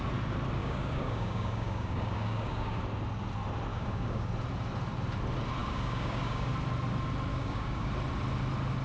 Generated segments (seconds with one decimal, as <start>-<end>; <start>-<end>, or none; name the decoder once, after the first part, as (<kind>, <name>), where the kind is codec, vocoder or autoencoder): 0.6-2.8 (codec, DAC); 3.7-4.3; 5.6-6.5; 7.3-7.9